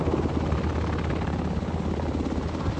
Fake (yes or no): no